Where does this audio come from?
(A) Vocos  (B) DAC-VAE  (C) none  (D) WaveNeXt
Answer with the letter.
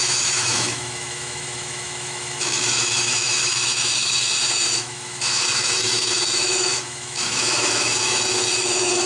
B